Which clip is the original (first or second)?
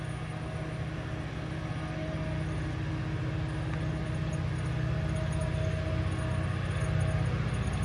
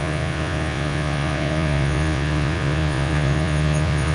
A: first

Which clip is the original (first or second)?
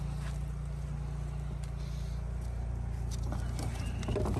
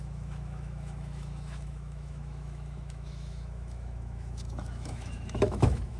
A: first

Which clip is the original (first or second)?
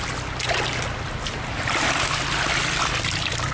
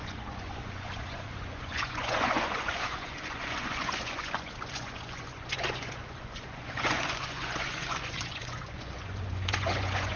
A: first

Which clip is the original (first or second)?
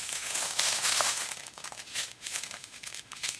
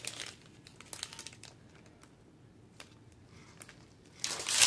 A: second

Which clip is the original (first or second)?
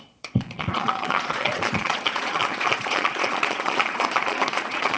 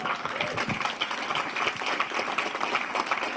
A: second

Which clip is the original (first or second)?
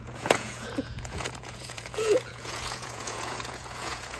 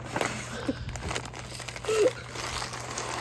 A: second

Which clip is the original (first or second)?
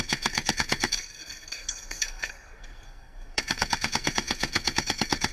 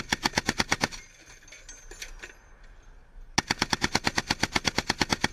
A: second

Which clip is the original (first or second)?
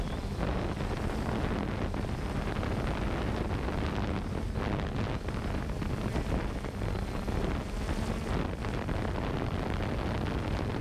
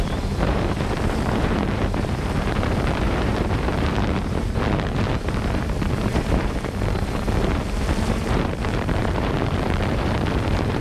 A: first